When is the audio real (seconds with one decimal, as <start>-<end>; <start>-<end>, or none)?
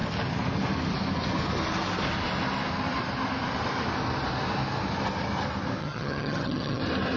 0.0-5.8; 6.8-7.2